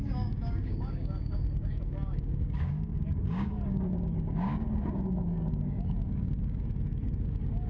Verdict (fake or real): fake